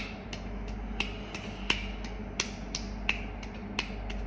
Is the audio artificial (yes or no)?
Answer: no